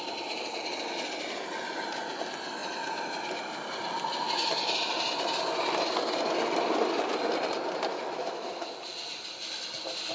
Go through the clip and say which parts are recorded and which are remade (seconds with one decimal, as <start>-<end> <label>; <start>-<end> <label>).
0.0-7.9 recorded; 7.9-8.5 remade; 8.5-10.1 recorded

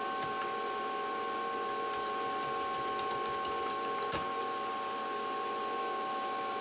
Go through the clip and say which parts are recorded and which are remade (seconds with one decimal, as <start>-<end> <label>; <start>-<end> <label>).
0.0-5.8 recorded; 5.8-6.6 remade

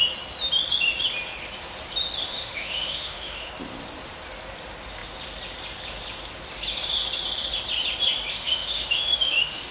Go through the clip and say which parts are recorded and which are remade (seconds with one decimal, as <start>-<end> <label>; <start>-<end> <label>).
0.0-2.2 recorded; 2.2-3.5 remade; 3.5-8.3 recorded; 8.3-9.7 remade

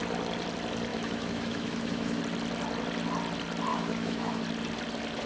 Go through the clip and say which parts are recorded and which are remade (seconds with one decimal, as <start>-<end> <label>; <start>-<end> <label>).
0.0-0.9 recorded; 0.9-2.2 remade; 2.2-3.7 recorded; 3.7-4.4 remade; 4.4-5.3 recorded

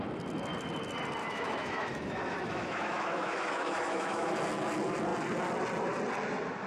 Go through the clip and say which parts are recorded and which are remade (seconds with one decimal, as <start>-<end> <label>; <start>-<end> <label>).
0.0-1.2 recorded; 1.2-4.3 remade; 4.3-6.7 recorded

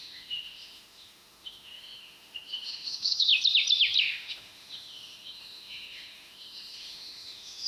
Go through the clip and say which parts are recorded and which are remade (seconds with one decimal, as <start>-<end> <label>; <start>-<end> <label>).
0.0-3.3 remade; 3.3-4.0 recorded; 4.0-7.7 remade

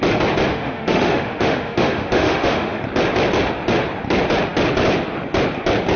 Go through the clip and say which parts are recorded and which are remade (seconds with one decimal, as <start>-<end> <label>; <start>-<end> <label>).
0.0-0.5 recorded; 0.5-2.8 remade; 2.8-6.0 recorded

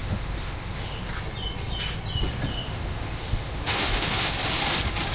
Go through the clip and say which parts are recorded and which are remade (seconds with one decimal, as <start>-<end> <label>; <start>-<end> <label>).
0.0-1.1 remade; 1.1-2.5 recorded; 2.5-4.3 remade; 4.3-5.1 recorded